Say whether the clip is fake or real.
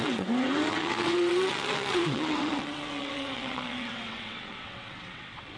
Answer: fake